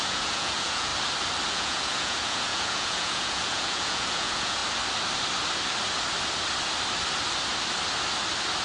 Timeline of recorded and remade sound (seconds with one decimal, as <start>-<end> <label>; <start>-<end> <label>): 0.0-0.9 remade; 0.9-1.5 recorded; 1.5-4.6 remade; 4.6-8.6 recorded